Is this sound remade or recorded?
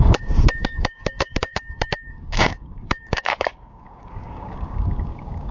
remade